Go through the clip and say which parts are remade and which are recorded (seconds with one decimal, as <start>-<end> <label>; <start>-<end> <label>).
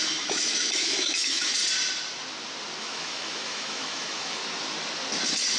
0.0-1.6 remade; 1.6-2.8 recorded; 2.8-4.4 remade; 4.4-5.6 recorded